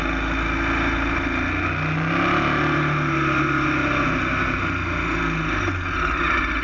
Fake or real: real